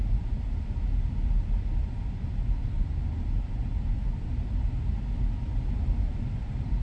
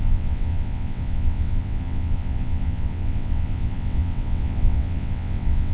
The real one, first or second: first